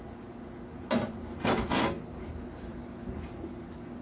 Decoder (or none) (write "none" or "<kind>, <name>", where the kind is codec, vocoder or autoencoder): none